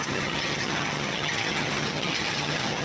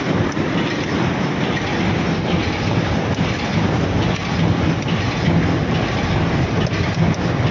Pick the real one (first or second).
second